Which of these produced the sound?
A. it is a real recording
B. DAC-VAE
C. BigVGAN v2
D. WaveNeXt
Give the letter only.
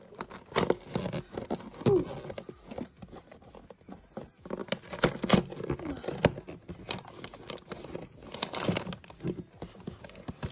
A